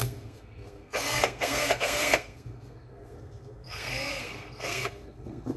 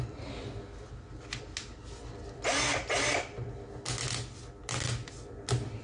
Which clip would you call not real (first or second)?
first